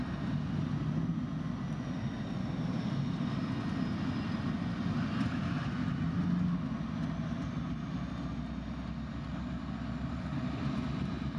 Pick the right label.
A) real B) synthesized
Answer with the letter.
A